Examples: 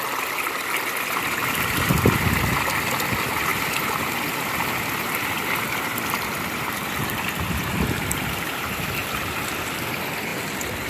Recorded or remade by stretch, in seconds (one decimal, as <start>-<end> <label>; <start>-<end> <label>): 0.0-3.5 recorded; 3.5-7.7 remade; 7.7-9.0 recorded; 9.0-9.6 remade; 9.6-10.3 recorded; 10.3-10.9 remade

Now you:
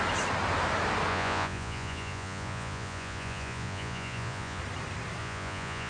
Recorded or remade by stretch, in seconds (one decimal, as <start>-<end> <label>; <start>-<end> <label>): 0.0-1.1 recorded; 1.1-4.6 remade; 4.6-5.2 recorded; 5.2-5.9 remade

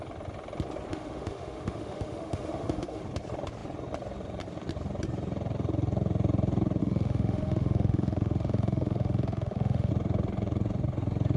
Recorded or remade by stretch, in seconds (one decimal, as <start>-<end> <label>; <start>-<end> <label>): 0.0-0.9 recorded; 0.9-3.0 remade; 3.0-6.8 recorded; 6.8-9.9 remade; 9.9-11.4 recorded